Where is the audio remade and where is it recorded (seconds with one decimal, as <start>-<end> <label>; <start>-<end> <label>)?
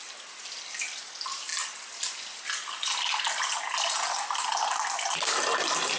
0.0-6.0 recorded